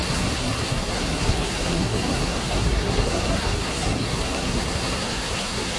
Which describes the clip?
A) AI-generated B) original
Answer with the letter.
A